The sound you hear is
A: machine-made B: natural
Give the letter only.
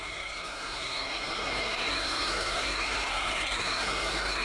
A